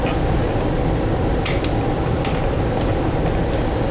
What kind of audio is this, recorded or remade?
recorded